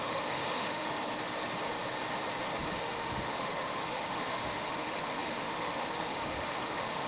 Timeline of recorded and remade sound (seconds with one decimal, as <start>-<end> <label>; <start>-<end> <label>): 0.0-0.9 remade; 0.9-2.8 recorded; 2.8-7.1 remade

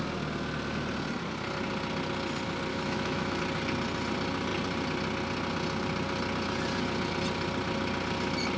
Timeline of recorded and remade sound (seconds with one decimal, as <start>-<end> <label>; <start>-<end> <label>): 0.0-2.7 recorded; 2.7-3.4 remade; 3.4-8.6 recorded

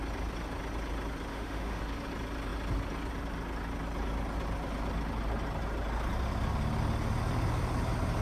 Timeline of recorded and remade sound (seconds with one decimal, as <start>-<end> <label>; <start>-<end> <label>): 0.0-1.3 recorded; 1.3-1.8 remade; 1.8-8.2 recorded

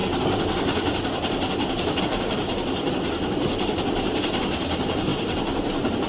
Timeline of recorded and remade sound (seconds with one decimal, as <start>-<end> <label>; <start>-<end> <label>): 0.0-6.1 recorded

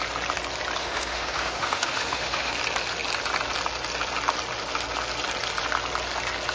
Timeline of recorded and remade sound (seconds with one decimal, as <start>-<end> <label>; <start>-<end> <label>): 0.0-0.8 recorded; 0.8-2.5 remade; 2.5-6.5 recorded

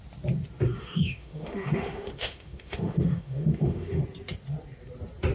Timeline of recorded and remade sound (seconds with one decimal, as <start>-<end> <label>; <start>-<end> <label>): 0.0-0.8 recorded; 0.8-4.0 remade; 4.0-5.3 recorded

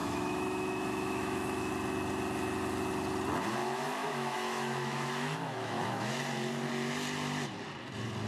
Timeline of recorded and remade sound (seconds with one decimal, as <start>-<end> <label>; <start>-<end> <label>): 0.0-1.7 remade; 1.7-3.6 recorded; 3.6-6.2 remade; 6.2-8.3 recorded